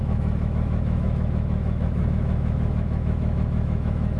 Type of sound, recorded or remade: remade